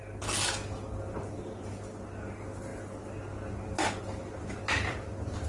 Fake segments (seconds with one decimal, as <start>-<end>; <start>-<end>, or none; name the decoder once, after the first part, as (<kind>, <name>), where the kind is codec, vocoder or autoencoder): none